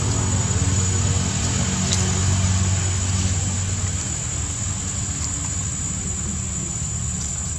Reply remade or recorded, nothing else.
recorded